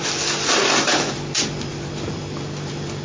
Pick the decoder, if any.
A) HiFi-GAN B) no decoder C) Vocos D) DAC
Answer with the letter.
B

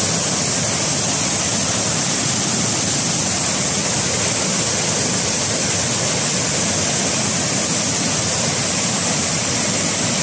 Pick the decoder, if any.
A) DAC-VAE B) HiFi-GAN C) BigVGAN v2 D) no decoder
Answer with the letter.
D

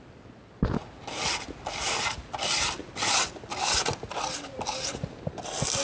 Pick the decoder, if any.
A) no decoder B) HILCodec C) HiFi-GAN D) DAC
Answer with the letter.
A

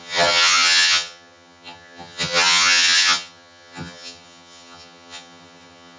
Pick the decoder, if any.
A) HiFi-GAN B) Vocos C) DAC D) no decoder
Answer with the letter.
A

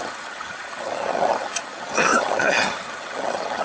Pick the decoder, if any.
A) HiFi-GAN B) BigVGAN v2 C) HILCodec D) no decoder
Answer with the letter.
A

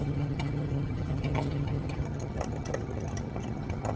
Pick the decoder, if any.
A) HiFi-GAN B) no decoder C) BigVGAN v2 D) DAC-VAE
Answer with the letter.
A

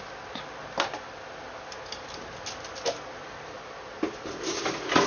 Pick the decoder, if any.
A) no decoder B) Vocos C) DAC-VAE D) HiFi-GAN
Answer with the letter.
A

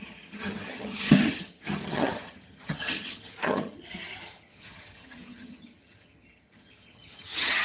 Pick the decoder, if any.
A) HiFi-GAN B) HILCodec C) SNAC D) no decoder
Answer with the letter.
A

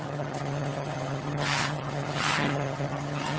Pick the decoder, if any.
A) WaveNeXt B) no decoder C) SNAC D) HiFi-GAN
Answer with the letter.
D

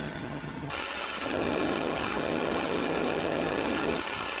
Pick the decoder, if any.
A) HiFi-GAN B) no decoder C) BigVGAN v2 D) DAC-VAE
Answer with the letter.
A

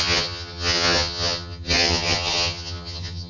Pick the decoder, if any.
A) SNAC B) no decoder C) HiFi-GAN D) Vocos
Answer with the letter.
C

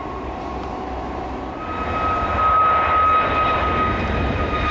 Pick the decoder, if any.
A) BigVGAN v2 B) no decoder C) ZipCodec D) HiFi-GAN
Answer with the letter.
B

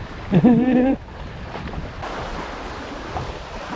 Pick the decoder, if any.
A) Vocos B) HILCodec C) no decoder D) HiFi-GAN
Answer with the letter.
C